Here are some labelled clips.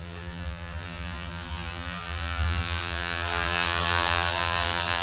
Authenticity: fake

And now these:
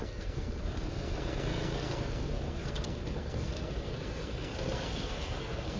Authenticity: fake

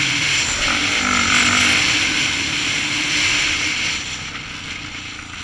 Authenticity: real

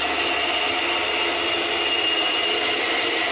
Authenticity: real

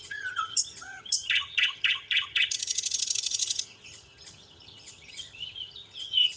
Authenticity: fake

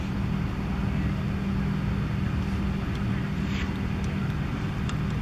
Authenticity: real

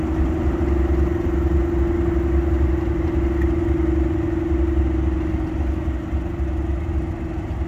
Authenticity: real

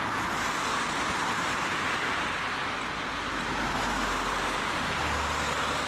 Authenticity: real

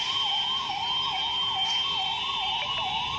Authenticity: real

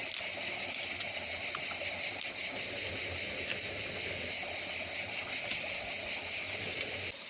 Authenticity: real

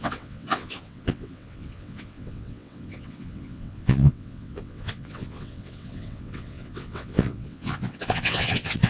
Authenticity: fake